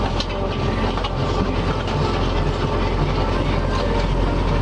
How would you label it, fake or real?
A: real